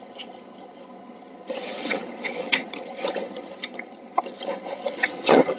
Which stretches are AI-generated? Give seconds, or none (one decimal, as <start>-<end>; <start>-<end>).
0.0-5.6